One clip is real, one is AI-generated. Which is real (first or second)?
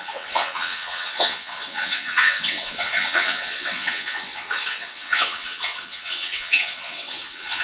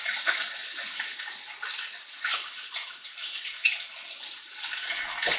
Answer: second